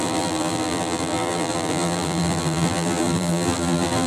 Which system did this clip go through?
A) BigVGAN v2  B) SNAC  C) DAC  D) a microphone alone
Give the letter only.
A